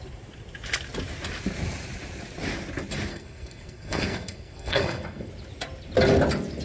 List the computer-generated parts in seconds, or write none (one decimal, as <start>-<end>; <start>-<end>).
3.1-5.3